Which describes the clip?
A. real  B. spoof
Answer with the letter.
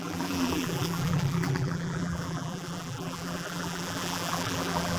B